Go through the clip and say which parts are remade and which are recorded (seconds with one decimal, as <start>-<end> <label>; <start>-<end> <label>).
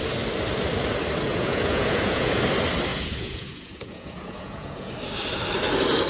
0.0-1.3 recorded; 1.3-2.3 remade; 2.3-2.9 recorded; 2.9-4.9 remade; 4.9-6.1 recorded